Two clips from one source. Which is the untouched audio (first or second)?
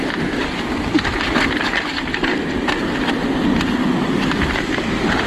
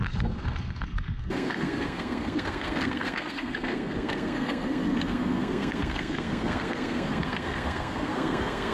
first